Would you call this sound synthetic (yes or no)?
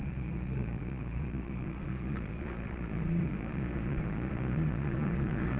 yes